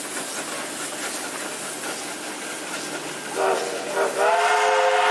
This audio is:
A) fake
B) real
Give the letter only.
B